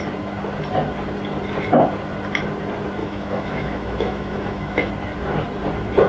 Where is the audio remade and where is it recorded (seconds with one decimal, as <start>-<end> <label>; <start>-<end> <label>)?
0.0-3.0 recorded; 3.0-4.9 remade; 4.9-6.1 recorded